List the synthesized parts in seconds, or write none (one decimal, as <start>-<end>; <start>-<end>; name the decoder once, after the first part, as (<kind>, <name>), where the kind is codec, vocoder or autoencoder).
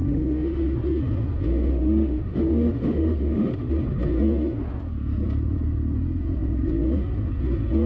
0.0-0.6 (autoencoder, DAC-VAE); 1.7-3.7